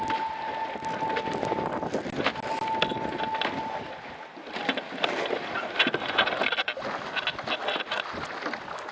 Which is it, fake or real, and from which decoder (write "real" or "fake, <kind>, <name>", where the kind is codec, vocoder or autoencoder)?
real